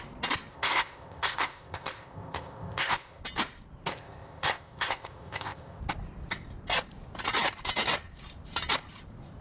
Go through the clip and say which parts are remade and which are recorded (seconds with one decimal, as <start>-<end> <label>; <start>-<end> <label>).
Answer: 0.0-0.5 recorded; 0.5-3.2 remade; 3.2-3.9 recorded; 3.9-5.8 remade; 5.8-9.4 recorded